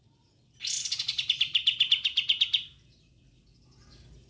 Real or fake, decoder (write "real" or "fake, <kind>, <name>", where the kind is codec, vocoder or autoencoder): real